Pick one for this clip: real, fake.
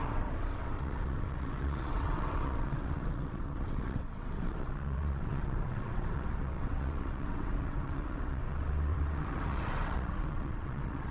fake